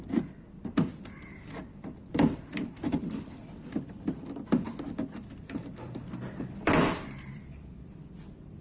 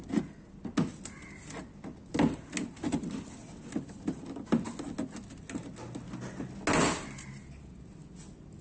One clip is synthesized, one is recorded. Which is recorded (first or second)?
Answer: second